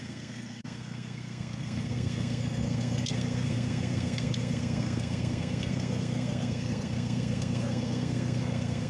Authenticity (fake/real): fake